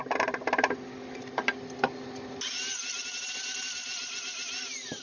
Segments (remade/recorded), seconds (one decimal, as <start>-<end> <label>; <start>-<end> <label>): 0.0-5.0 recorded